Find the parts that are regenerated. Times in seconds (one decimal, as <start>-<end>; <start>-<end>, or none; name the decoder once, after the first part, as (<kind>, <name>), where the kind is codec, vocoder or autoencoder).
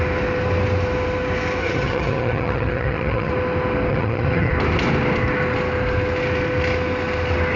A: 1.6-3.3 (vocoder, HiFi-GAN); 3.9-4.5